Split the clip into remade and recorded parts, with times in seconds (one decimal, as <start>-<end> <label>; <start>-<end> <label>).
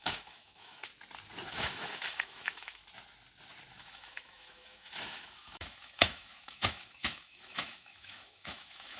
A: 0.0-0.9 remade; 0.9-1.5 recorded; 1.5-2.8 remade; 2.8-3.8 recorded; 3.8-9.0 remade